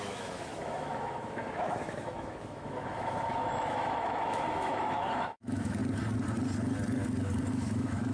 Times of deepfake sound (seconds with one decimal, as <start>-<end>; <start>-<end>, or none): 0.0-5.8; 7.5-8.1